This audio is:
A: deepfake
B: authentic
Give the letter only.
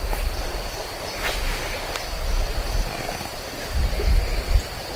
B